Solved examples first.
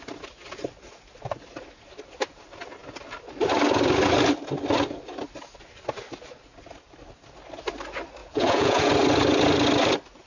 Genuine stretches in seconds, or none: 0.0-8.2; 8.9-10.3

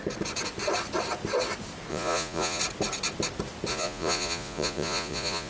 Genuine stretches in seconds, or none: 0.0-1.9; 2.6-3.7

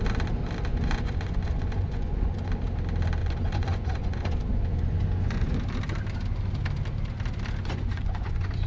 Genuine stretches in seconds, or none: 0.0-0.7; 2.5-3.2; 5.6-7.6

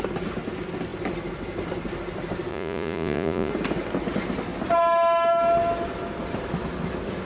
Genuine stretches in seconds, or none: 0.0-2.5; 3.5-7.3